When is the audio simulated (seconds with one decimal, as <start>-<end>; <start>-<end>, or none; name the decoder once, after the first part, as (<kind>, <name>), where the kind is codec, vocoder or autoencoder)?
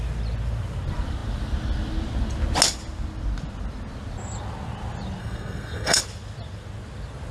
5.2-6.0 (codec, SNAC)